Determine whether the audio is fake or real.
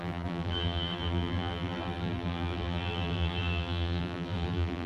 fake